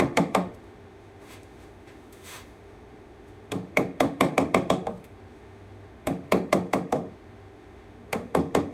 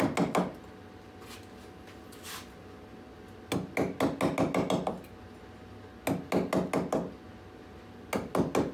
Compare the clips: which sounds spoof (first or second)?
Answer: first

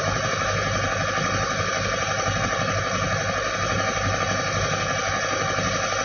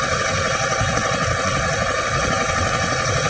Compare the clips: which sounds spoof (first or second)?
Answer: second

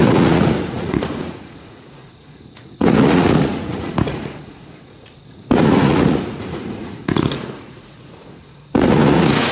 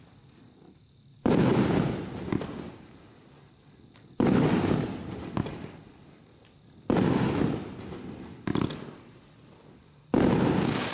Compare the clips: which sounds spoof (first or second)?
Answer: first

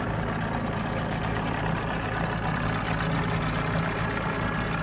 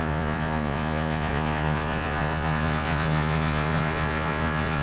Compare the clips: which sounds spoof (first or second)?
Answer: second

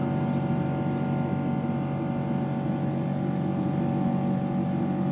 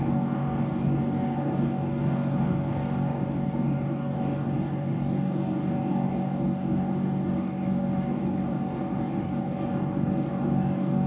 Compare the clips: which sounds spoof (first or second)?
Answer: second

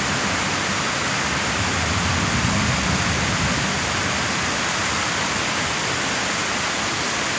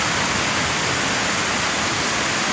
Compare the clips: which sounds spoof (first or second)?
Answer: first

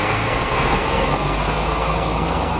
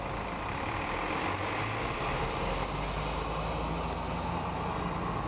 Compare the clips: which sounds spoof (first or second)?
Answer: first